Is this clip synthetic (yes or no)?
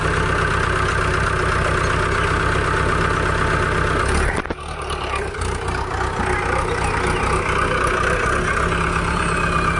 no